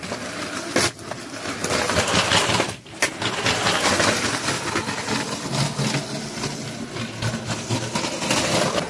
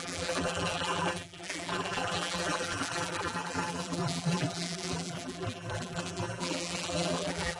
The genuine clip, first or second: first